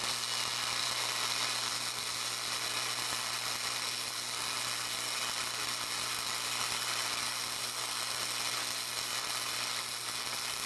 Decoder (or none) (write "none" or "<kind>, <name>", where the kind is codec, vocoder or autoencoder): none